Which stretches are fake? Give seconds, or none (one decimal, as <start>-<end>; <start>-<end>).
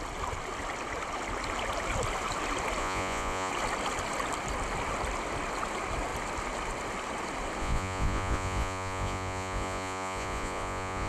2.8-3.5; 7.6-11.1